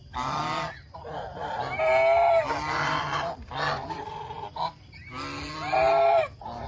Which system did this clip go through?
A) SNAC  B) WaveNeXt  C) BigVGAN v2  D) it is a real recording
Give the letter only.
D